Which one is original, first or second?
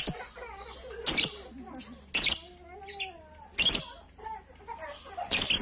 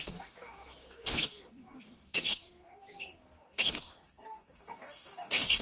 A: first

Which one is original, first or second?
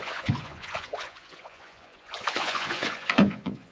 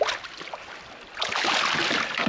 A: second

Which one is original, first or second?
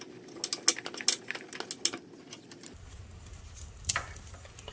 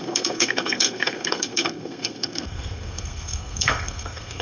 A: first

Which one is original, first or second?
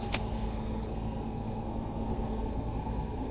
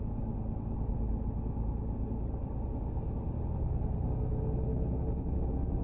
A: second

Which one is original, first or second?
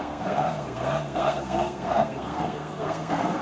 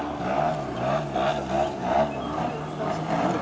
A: second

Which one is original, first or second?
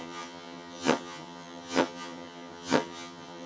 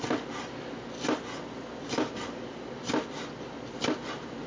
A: second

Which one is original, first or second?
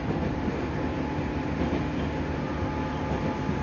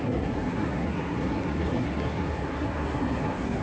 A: first